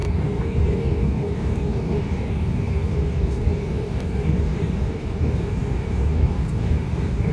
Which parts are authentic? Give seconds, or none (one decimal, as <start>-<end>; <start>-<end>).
none